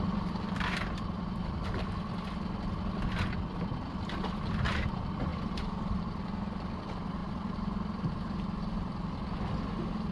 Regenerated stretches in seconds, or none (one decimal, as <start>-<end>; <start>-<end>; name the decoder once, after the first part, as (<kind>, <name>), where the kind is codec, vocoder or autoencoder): 5.3-6.0 (vocoder, BigVGAN v2); 7.2-8.4